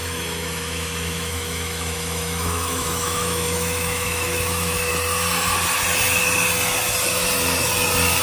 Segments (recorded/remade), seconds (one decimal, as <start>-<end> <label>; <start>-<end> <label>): 0.0-4.9 remade; 4.9-8.2 recorded